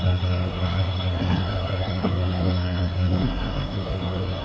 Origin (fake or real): fake